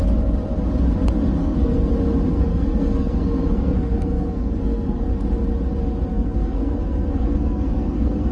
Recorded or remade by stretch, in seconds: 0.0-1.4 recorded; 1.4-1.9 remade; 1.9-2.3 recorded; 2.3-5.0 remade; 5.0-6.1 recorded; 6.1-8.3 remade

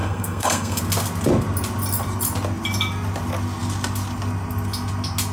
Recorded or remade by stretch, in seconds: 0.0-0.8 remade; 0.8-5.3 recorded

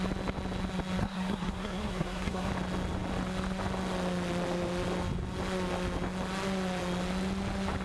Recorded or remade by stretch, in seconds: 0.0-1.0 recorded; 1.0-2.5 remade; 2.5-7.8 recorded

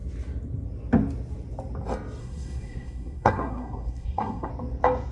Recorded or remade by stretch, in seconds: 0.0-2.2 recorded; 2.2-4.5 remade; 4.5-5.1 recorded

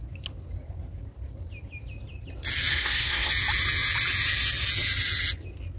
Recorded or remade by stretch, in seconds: 0.0-2.7 recorded; 2.7-3.3 remade; 3.3-5.8 recorded

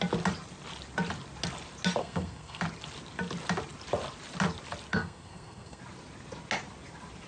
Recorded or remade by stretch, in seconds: 0.0-2.0 recorded; 2.0-2.6 remade; 2.6-4.9 recorded; 4.9-5.8 remade; 5.8-7.3 recorded

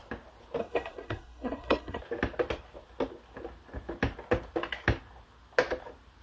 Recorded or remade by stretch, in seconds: 0.0-0.6 recorded; 0.6-2.0 remade; 2.0-6.2 recorded

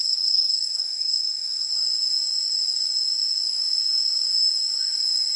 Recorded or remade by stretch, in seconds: 0.0-1.7 remade; 1.7-5.4 recorded